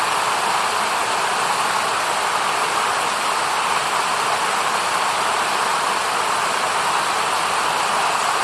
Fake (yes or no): no